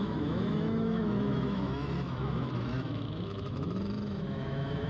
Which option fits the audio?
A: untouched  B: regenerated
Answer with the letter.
B